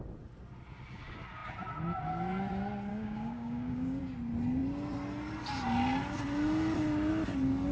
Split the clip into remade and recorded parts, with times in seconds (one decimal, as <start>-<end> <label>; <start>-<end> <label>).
0.0-2.9 recorded; 2.9-4.0 remade; 4.0-7.7 recorded